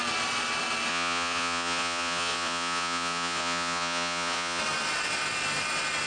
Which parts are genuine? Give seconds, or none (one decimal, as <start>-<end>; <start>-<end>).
0.0-0.9; 4.6-6.1